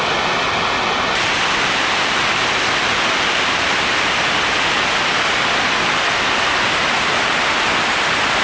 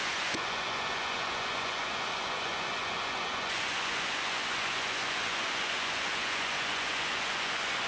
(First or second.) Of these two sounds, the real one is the first